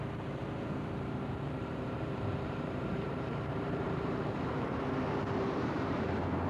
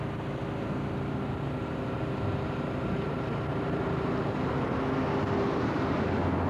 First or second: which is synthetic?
first